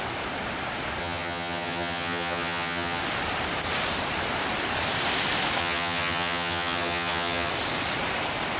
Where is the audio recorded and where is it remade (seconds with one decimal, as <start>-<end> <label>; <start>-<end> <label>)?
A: 0.0-1.0 recorded; 1.0-3.0 remade; 3.0-5.6 recorded; 5.6-7.5 remade; 7.5-8.6 recorded